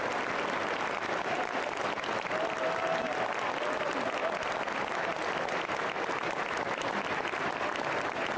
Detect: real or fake real